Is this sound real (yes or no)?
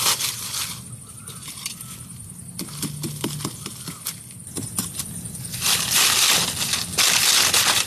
yes